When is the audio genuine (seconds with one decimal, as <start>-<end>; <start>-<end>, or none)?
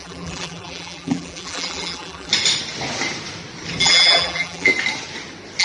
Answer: 2.3-3.8; 4.7-5.6